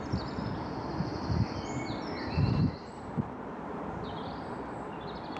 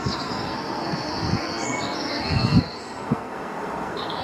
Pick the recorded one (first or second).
first